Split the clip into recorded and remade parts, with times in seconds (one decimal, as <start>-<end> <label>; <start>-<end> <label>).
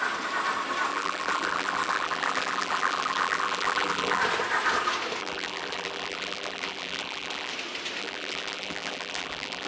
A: 0.0-0.9 recorded; 0.9-4.2 remade; 4.2-5.2 recorded; 5.2-7.5 remade; 7.5-8.0 recorded; 8.0-9.7 remade